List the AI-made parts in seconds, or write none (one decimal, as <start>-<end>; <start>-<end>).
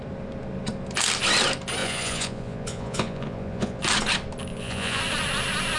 1.8-3.8; 4.5-5.0